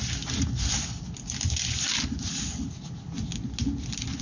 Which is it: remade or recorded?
recorded